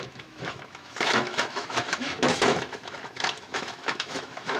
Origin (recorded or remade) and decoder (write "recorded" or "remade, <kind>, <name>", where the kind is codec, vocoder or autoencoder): remade, autoencoder, DAC-VAE